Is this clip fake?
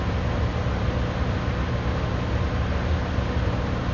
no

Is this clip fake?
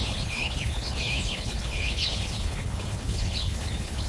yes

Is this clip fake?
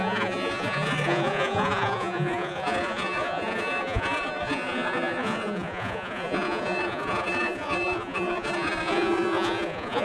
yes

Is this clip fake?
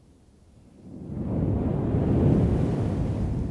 no